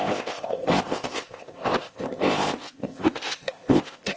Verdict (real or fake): fake